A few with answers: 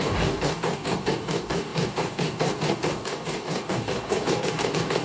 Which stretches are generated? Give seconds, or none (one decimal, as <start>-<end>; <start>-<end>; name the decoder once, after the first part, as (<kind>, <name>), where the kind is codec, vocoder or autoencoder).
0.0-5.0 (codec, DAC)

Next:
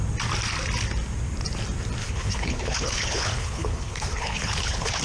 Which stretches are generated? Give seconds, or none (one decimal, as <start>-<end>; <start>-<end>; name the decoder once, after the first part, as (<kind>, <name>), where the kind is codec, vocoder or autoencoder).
2.0-5.0 (codec, HILCodec)

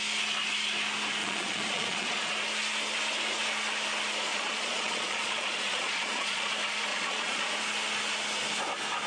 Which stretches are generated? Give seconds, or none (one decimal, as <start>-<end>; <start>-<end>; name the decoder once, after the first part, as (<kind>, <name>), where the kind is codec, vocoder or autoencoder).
1.2-2.3 (vocoder, Vocos); 4.3-6.5; 6.9-7.5